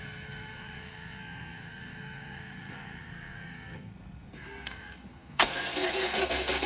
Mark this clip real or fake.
fake